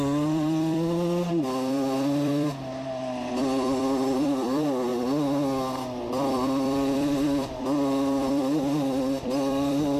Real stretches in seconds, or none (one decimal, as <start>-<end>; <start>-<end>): 4.9-6.0